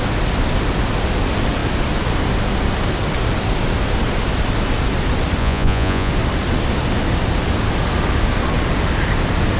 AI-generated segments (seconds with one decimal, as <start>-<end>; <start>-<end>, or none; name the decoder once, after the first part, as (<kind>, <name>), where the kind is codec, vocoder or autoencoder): 5.4-6.1 (vocoder, Vocos)